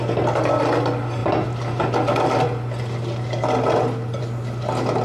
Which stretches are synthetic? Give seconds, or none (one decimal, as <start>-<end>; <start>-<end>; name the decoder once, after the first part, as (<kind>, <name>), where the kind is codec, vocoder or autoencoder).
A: none